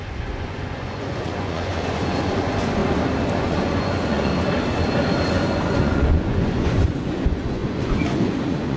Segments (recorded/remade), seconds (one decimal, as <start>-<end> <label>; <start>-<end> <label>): 0.0-2.8 remade; 2.8-3.3 recorded; 3.3-4.3 remade; 4.3-5.3 recorded; 5.3-8.8 remade